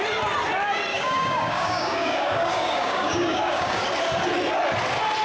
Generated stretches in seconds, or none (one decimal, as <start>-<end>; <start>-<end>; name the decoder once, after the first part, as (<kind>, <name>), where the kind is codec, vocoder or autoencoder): 0.9-3.8 (codec, DAC)